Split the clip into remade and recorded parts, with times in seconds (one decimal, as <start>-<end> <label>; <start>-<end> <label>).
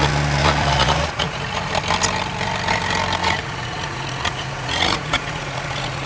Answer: 0.0-0.4 recorded; 0.4-1.7 remade; 1.7-3.2 recorded; 3.2-6.1 remade